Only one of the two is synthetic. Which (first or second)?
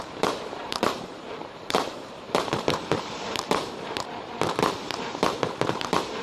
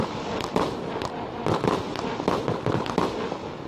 first